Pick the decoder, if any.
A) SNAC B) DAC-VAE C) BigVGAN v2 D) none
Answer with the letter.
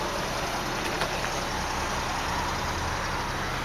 D